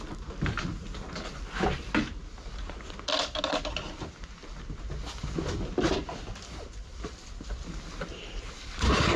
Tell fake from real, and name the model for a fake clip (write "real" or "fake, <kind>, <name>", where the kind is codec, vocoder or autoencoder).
real